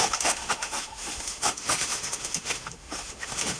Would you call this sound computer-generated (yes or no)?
yes